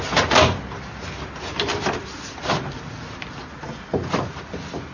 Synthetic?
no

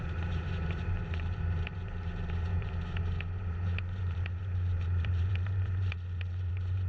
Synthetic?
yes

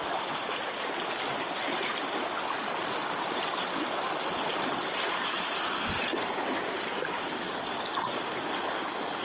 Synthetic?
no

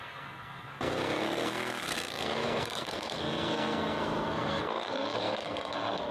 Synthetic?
yes